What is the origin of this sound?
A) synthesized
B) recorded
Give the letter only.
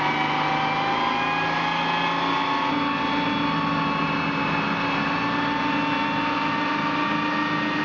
B